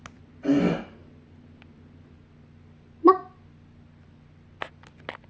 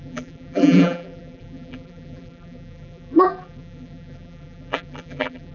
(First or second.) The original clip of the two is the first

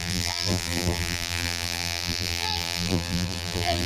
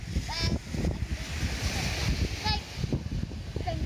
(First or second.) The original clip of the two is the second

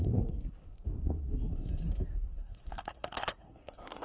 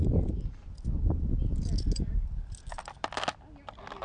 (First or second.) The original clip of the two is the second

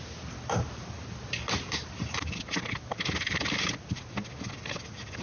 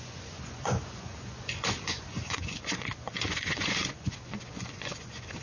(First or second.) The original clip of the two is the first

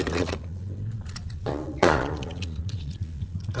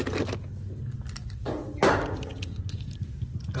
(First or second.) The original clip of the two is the second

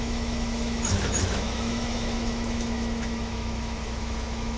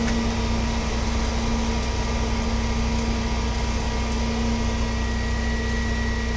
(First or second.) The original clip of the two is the second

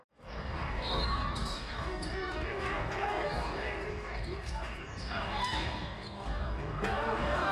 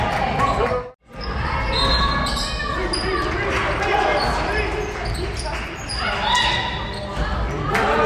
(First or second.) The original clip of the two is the second